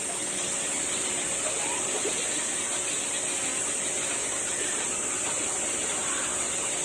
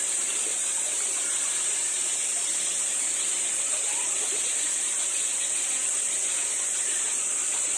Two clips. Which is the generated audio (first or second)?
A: second